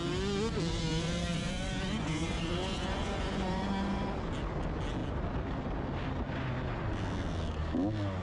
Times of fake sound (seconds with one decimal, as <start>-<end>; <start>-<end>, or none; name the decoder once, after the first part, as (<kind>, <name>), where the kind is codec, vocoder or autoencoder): 0.7-3.7 (vocoder, Vocos)